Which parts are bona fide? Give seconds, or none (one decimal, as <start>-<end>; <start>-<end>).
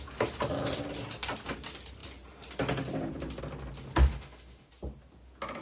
0.0-3.9; 4.7-5.6